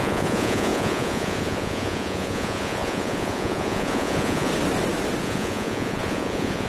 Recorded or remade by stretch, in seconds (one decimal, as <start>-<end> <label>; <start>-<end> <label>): 0.0-4.5 remade; 4.5-5.2 recorded; 5.2-6.7 remade